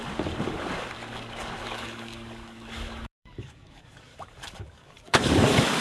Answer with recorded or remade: remade